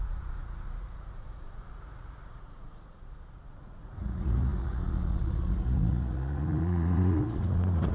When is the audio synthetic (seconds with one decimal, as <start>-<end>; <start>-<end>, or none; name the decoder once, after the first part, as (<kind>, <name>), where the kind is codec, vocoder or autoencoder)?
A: 0.0-7.9 (vocoder, Vocos)